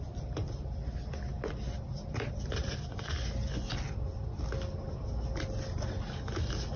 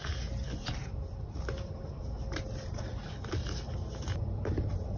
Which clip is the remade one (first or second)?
second